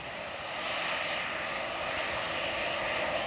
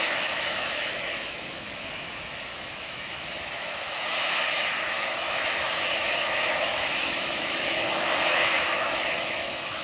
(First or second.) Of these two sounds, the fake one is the second